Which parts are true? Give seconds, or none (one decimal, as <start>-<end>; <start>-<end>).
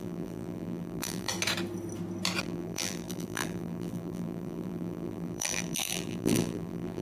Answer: 1.3-2.4